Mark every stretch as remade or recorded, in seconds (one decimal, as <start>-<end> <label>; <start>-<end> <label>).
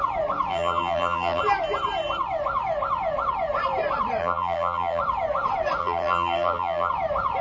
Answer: 0.0-0.5 recorded; 0.5-1.4 remade; 1.4-4.2 recorded; 4.2-5.0 remade; 5.0-5.8 recorded; 5.8-6.9 remade; 6.9-7.4 recorded